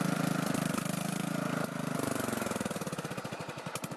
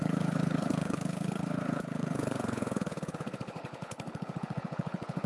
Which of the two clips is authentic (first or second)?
first